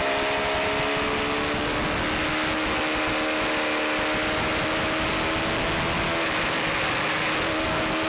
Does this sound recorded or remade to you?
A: recorded